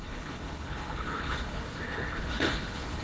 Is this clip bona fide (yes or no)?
no